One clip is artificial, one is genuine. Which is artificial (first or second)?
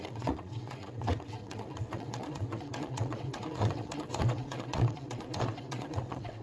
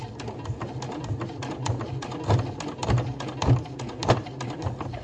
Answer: first